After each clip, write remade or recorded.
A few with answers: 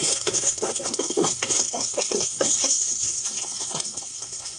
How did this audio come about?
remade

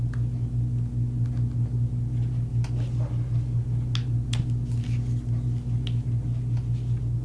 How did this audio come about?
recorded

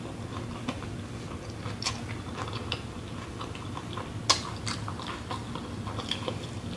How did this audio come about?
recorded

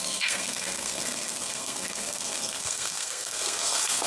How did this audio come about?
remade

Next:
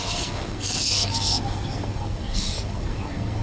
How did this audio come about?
remade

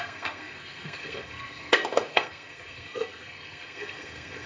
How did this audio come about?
remade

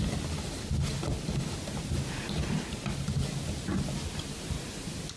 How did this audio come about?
recorded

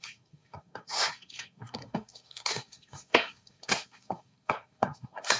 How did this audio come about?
remade